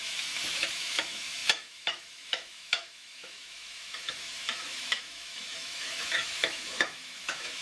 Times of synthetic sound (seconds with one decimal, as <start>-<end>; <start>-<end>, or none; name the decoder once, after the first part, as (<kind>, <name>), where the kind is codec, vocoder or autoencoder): 0.0-7.6 (autoencoder, DAC-VAE)